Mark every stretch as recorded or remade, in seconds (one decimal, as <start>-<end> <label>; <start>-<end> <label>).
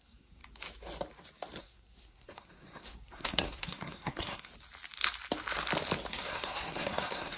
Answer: 0.0-0.4 remade; 0.4-1.6 recorded; 1.6-4.5 remade; 4.5-6.1 recorded; 6.1-7.4 remade